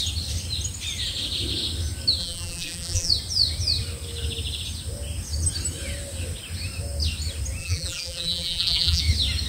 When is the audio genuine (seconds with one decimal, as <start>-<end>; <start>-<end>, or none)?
0.0-2.2; 3.1-7.6; 9.0-9.5